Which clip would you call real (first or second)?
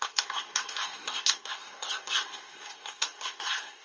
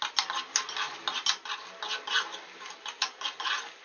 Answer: second